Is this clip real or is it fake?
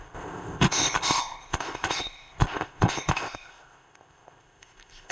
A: fake